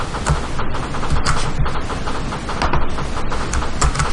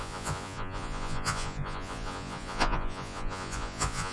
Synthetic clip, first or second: second